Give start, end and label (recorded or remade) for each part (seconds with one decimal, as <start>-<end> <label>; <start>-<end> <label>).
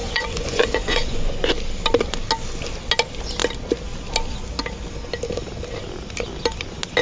0.0-1.3 remade; 1.3-7.0 recorded